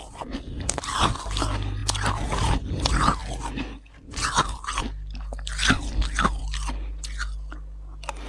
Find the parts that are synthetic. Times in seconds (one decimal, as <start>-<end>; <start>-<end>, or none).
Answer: none